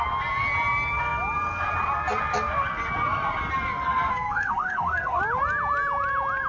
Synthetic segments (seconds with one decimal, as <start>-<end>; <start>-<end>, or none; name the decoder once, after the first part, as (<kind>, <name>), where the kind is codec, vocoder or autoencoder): 4.1-5.2 (codec, SNAC)